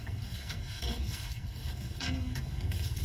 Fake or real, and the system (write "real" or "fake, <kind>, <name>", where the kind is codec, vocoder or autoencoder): fake, codec, SNAC